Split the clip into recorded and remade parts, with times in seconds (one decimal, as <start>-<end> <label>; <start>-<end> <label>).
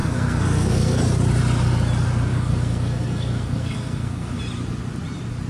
0.0-1.0 remade; 1.0-2.3 recorded; 2.3-4.4 remade; 4.4-5.5 recorded